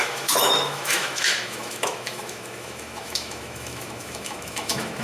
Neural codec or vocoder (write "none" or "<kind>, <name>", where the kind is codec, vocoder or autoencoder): autoencoder, DAC-VAE